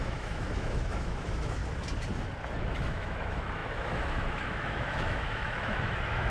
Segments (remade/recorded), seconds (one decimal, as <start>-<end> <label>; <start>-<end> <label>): 0.0-1.6 remade; 1.6-2.6 recorded; 2.6-6.3 remade